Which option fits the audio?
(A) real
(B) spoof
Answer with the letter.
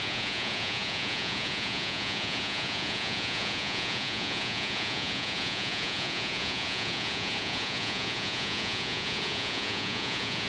B